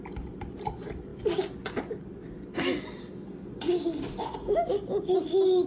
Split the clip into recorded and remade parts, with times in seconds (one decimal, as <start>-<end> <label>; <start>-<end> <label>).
0.0-5.7 recorded